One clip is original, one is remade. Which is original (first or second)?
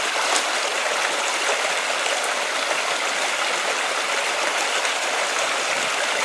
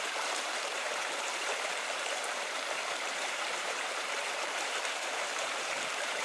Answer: first